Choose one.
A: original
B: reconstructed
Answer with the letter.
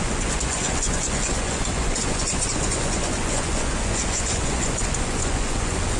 B